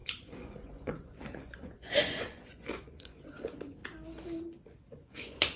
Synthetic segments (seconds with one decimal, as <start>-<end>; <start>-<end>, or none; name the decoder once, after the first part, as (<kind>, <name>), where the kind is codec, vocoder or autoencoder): 0.0-3.8 (vocoder, Vocos); 4.9-5.6